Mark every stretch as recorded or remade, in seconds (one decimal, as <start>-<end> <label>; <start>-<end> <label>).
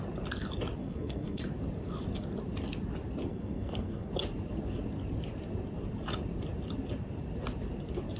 0.0-0.8 recorded; 0.8-1.4 remade; 1.4-3.3 recorded; 3.3-4.1 remade; 4.1-8.2 recorded